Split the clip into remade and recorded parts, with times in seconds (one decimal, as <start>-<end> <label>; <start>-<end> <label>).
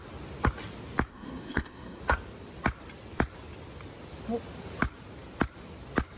0.0-1.1 recorded; 1.1-2.0 remade; 2.0-6.2 recorded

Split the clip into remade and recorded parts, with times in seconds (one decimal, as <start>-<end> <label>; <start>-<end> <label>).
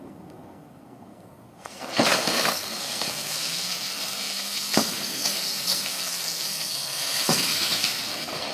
0.0-8.5 remade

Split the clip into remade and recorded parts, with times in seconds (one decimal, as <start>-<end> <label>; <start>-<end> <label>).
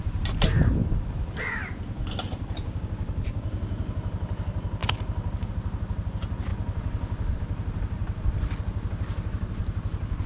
0.0-10.3 recorded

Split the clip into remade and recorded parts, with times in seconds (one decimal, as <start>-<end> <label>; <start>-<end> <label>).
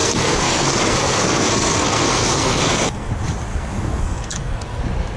0.0-3.1 remade; 3.1-3.5 recorded; 3.5-4.8 remade; 4.8-5.2 recorded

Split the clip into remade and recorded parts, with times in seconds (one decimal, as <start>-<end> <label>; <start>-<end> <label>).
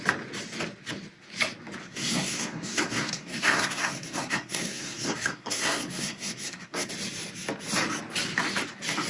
0.0-1.8 recorded; 1.8-6.9 remade; 6.9-9.1 recorded